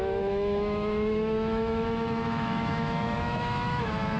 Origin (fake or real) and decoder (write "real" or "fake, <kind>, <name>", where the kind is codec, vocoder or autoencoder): fake, autoencoder, DAC-VAE